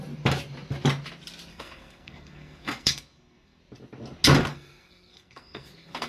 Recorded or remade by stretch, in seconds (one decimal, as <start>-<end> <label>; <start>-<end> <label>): 0.0-1.5 recorded; 1.5-3.6 remade; 3.6-4.5 recorded; 4.5-6.1 remade